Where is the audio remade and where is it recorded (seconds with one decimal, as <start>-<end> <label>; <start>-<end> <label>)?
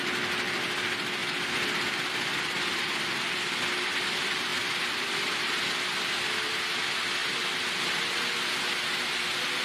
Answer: 0.0-9.6 recorded